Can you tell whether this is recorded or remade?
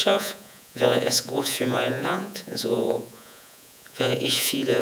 remade